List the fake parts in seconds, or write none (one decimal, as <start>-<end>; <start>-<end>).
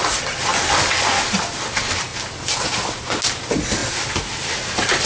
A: none